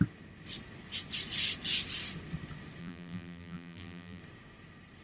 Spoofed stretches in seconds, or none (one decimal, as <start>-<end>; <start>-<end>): 2.8-4.2